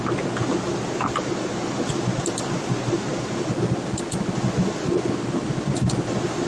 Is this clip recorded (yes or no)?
yes